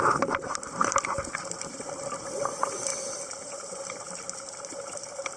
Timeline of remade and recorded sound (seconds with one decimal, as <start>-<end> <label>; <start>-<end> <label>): 0.0-0.8 remade; 0.8-1.7 recorded; 1.7-5.4 remade